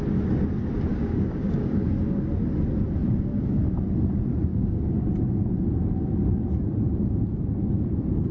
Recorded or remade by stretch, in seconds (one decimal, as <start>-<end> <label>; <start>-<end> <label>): 0.0-0.9 recorded; 0.9-2.3 remade; 2.3-3.0 recorded; 3.0-3.6 remade; 3.6-4.5 recorded; 4.5-5.1 remade; 5.1-8.3 recorded